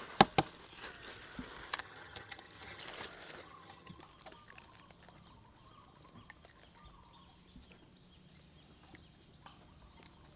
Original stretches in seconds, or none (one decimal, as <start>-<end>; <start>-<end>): 0.0-1.8; 2.8-3.4; 4.0-10.4